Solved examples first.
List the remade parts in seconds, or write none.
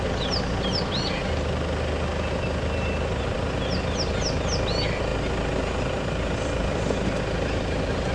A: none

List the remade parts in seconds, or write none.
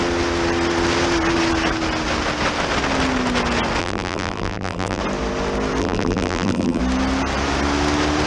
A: 3.8-5.0 (vocoder, BigVGAN v2); 5.8-6.8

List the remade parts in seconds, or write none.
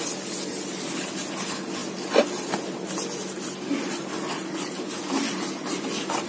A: none